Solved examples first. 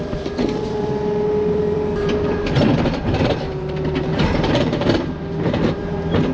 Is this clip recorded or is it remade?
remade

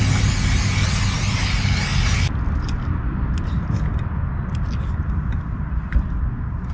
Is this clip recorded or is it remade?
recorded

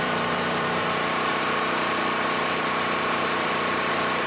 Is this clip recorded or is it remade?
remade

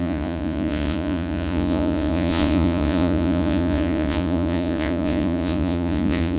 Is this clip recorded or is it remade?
remade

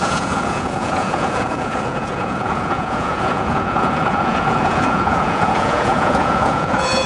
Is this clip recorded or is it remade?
remade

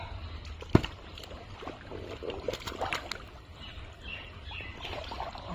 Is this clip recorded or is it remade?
recorded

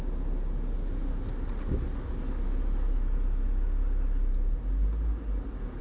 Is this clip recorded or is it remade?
recorded